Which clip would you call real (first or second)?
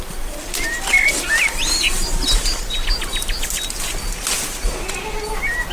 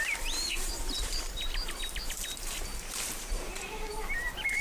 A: first